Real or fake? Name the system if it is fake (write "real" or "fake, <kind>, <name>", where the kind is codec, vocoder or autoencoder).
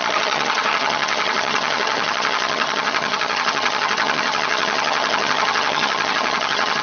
fake, vocoder, HiFi-GAN